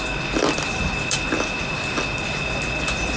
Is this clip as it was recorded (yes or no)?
yes